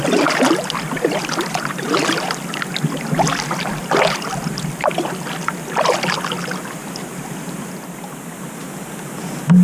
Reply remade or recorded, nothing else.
recorded